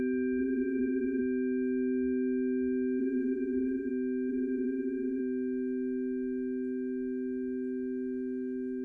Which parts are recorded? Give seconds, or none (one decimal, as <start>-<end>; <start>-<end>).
0.0-0.4; 1.2-3.0; 3.9-4.3; 5.2-8.8